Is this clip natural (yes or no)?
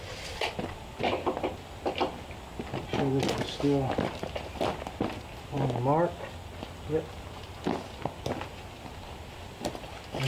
yes